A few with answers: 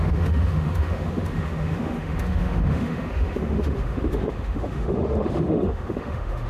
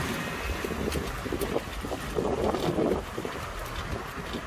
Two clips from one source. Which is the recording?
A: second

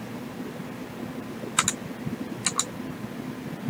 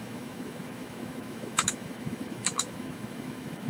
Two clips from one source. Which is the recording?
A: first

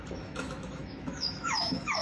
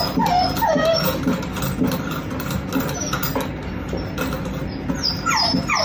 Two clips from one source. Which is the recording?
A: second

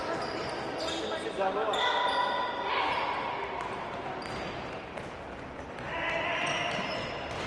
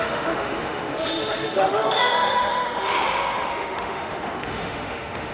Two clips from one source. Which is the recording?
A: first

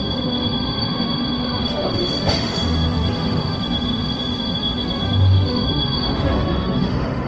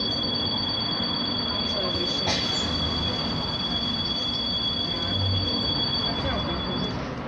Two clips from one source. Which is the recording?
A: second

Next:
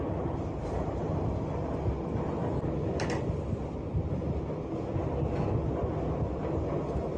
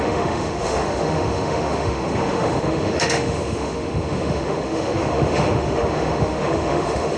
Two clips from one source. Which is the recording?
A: first